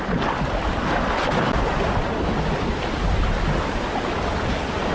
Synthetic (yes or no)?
no